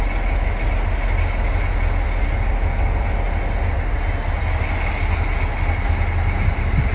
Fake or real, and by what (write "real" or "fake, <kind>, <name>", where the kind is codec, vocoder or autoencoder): real